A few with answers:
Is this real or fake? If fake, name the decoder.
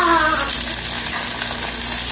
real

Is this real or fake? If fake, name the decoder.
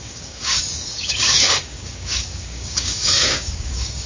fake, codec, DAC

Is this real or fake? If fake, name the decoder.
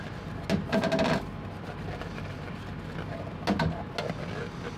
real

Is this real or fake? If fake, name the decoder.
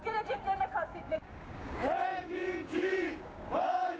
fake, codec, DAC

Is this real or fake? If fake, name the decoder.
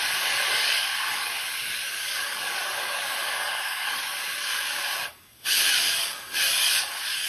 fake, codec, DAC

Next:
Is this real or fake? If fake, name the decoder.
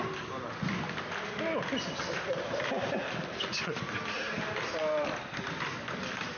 real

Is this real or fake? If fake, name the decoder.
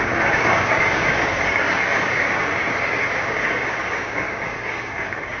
fake, codec, DAC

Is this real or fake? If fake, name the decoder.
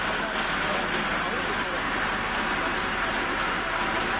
real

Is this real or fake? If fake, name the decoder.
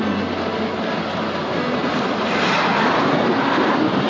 real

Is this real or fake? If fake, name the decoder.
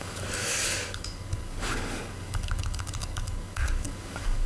fake, codec, DAC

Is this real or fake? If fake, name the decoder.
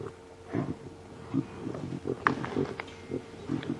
real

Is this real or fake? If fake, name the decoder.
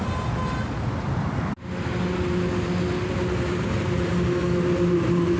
real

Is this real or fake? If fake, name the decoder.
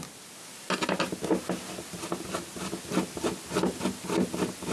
real